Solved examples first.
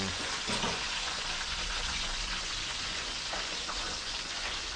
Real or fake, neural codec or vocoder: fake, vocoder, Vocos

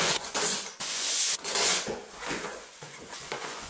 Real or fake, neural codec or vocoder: fake, vocoder, Vocos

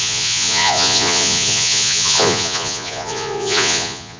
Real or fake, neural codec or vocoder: fake, vocoder, Vocos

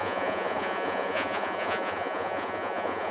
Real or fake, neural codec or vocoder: fake, vocoder, Vocos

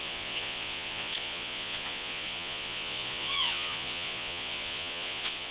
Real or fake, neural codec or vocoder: fake, vocoder, Vocos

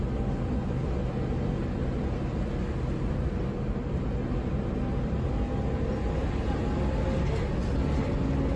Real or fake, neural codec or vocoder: real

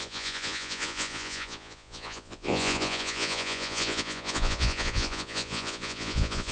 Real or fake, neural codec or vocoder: fake, vocoder, Vocos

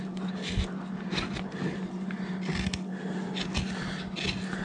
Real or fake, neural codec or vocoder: real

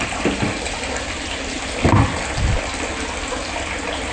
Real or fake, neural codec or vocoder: real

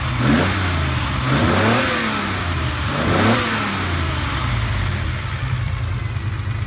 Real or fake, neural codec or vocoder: real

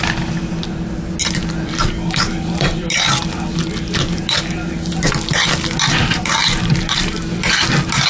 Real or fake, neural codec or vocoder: real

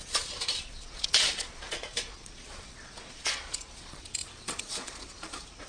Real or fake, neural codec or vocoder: fake, vocoder, Vocos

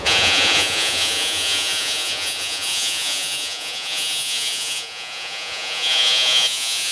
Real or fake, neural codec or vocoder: fake, vocoder, Vocos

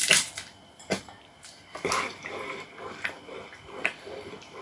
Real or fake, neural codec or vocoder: real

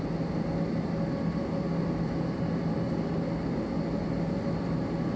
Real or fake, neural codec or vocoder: real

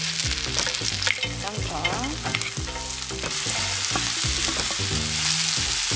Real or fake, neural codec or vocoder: real